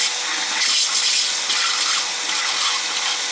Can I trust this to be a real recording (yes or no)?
yes